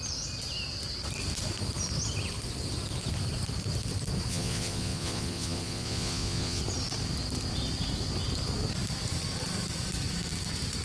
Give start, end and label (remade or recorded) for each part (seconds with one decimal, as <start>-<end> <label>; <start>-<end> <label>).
0.0-4.3 recorded; 4.3-6.6 remade; 6.6-10.8 recorded